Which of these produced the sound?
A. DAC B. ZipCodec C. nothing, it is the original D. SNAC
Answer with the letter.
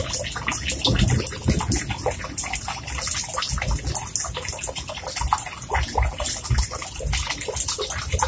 C